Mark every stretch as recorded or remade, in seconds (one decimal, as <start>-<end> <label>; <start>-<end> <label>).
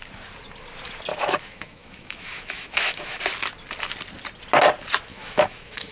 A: 0.0-1.1 recorded; 1.1-3.2 remade; 3.2-5.1 recorded; 5.1-5.9 remade